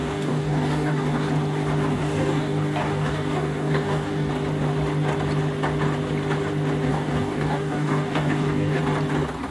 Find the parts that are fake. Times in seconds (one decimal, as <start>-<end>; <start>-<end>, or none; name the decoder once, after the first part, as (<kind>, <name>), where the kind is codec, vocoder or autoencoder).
0.0-1.3 (codec, DAC); 1.9-4.3; 6.9-8.8